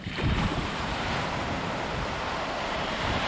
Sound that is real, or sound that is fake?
fake